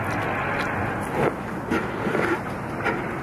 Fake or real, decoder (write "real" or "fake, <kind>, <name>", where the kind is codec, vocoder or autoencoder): real